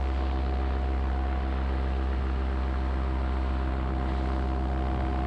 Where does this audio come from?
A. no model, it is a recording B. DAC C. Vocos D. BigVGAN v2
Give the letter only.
A